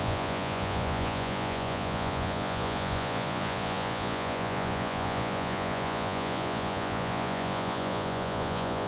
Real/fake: fake